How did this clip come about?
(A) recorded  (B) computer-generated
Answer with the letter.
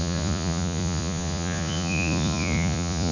B